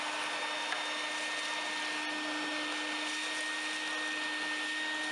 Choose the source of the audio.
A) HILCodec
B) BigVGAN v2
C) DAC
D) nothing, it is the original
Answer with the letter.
D